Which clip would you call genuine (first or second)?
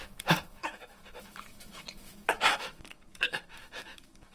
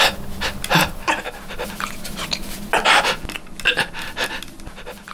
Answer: second